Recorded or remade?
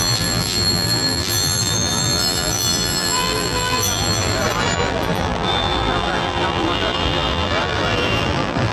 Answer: remade